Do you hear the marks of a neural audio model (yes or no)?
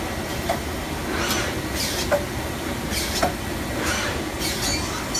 no